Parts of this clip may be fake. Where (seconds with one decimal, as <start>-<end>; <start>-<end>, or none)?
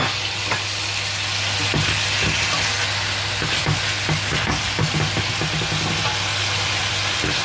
6.3-6.9